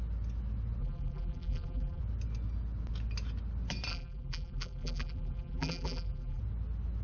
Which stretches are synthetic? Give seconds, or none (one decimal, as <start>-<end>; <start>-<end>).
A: 0.8-2.0; 3.9-6.4